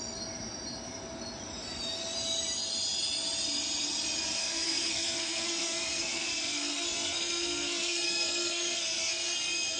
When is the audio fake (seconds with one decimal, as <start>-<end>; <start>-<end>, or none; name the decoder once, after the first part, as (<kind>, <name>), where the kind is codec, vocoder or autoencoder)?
4.4-9.8 (codec, SNAC)